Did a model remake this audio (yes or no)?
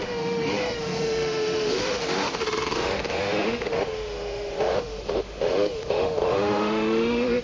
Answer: yes